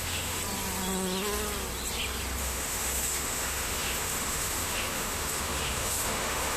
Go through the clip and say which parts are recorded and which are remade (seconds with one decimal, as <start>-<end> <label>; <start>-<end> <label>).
0.0-0.4 remade; 0.4-2.4 recorded; 2.4-6.6 remade